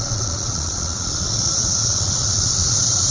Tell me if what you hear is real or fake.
fake